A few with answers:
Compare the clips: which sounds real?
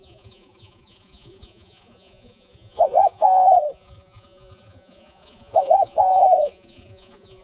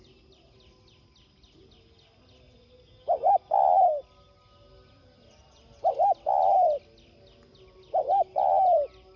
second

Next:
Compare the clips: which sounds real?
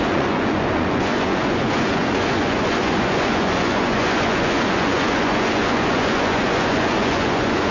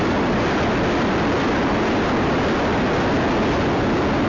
second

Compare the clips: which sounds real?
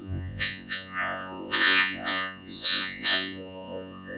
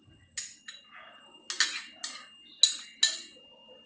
second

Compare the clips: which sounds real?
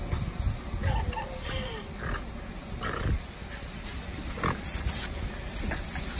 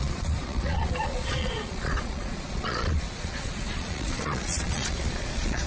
first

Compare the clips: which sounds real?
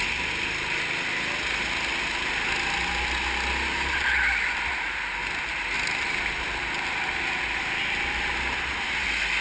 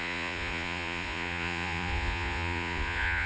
first